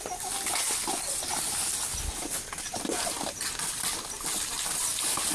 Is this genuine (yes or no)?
yes